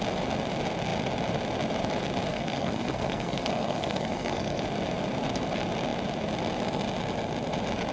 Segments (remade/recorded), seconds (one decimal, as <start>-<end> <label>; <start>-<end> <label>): 0.0-2.3 recorded; 2.3-4.6 remade; 4.6-7.9 recorded